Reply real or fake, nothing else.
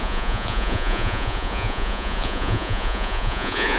fake